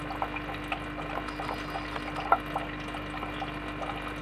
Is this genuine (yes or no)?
yes